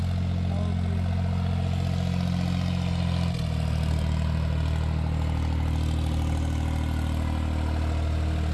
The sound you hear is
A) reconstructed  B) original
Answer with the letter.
B